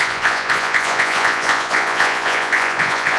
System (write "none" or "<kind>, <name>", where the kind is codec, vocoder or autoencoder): vocoder, Vocos